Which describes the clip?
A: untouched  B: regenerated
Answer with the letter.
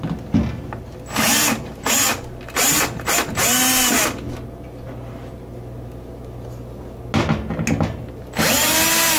A